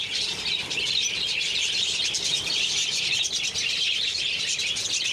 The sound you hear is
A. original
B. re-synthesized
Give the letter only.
A